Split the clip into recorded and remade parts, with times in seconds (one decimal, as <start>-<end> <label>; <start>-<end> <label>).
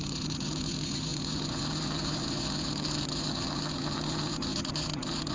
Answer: 0.0-5.3 remade